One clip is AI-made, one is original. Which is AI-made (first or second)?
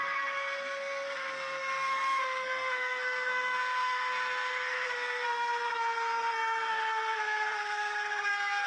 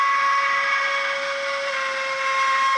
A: first